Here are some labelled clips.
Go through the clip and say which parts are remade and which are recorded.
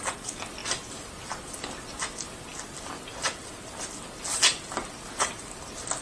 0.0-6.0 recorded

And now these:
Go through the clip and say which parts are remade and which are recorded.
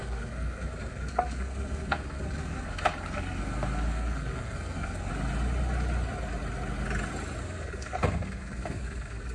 0.0-5.1 remade; 5.1-7.4 recorded; 7.4-9.3 remade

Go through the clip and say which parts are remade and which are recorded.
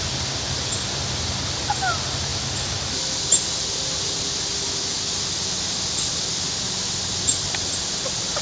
0.0-8.4 recorded